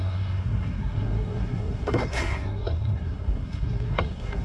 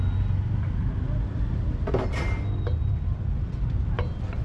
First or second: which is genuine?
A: second